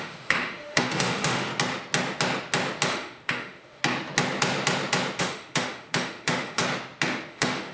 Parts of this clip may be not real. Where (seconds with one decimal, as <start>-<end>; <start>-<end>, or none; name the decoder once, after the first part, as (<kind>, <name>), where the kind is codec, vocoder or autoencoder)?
0.0-1.5 (autoencoder, DAC-VAE); 2.9-3.8; 5.2-6.6; 7.3-7.7